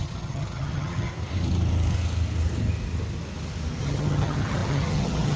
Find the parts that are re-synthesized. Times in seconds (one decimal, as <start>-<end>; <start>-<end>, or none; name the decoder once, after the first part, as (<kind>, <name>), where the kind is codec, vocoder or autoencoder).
0.0-1.1 (vocoder, HiFi-GAN); 3.8-5.4